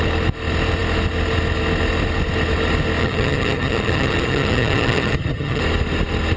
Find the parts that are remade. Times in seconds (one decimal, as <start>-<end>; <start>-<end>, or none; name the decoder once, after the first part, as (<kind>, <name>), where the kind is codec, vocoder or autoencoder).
3.0-5.6 (vocoder, HiFi-GAN)